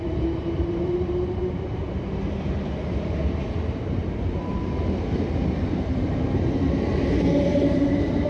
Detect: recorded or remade remade